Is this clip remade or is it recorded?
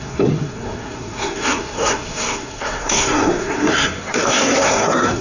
remade